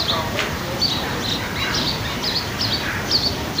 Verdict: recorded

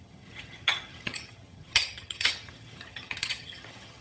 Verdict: remade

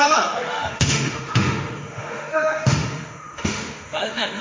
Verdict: remade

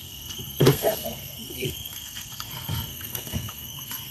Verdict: remade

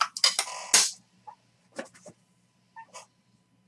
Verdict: recorded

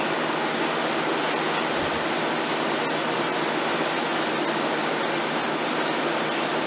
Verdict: recorded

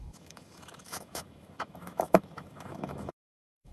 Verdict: remade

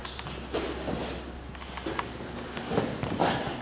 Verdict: recorded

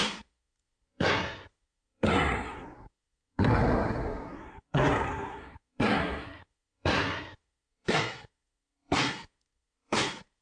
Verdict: remade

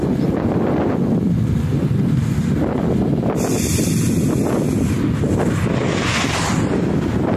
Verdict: recorded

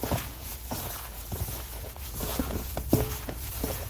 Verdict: remade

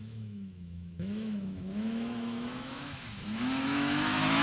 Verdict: remade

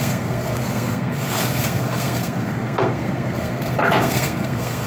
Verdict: remade